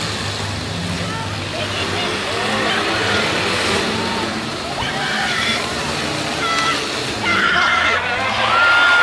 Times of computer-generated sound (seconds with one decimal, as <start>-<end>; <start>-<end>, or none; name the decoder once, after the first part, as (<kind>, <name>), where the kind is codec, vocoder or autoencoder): 2.1-5.8 (vocoder, BigVGAN v2)